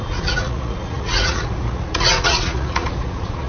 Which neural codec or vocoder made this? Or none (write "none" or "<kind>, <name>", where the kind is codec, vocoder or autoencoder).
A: vocoder, Vocos